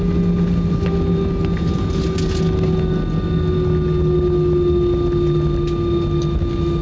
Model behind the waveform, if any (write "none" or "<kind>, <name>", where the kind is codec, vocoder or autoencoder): none